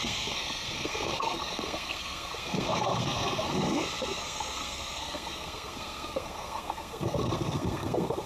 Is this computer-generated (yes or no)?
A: yes